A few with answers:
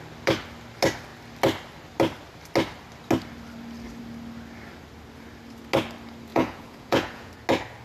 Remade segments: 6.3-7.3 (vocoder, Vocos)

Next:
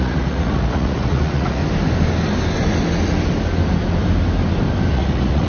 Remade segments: 0.0-1.6 (vocoder, Vocos); 4.9-5.5

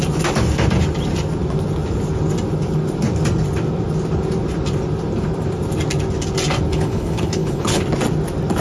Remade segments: 6.7-7.8 (codec, HILCodec)

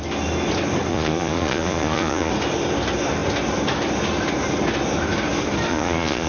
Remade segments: 0.9-2.3 (vocoder, Vocos); 5.7-6.3

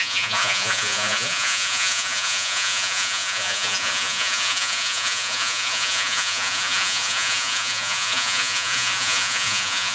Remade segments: 0.0-9.9 (vocoder, Vocos)

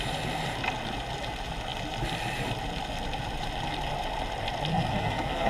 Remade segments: 4.7-5.5 (codec, SNAC)